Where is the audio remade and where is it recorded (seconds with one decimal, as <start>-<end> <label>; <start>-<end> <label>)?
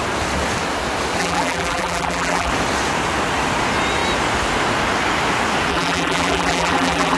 0.0-1.2 recorded; 1.2-2.5 remade; 2.5-5.7 recorded; 5.7-7.2 remade